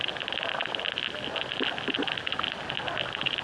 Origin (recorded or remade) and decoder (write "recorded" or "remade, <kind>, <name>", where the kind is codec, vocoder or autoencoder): recorded